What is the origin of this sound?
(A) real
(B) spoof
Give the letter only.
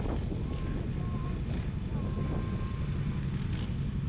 A